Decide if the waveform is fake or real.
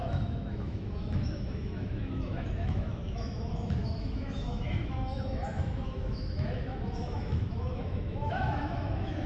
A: fake